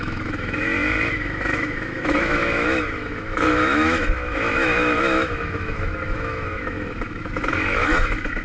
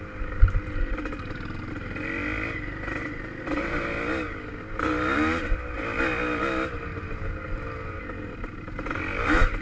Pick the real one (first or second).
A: second